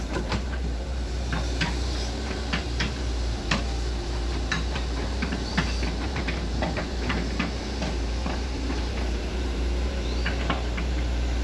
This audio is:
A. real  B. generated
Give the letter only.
B